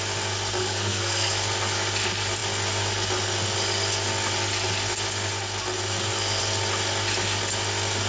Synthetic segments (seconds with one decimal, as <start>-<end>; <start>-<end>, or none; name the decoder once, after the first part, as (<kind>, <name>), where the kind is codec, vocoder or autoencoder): 0.6-1.3 (codec, SNAC)